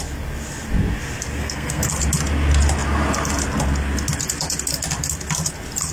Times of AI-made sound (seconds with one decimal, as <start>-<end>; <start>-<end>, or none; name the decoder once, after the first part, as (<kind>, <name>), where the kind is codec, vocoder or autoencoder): 1.4-1.9 (codec, SNAC)